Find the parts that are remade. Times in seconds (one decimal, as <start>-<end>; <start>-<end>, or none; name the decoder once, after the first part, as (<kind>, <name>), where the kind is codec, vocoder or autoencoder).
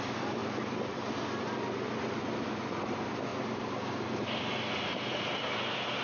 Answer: 0.0-3.3 (vocoder, BigVGAN v2); 4.2-6.0